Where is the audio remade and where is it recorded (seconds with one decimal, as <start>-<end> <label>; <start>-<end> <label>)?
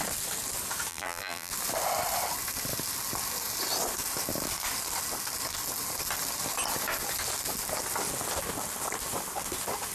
0.0-0.9 recorded; 0.9-1.5 remade; 1.5-9.9 recorded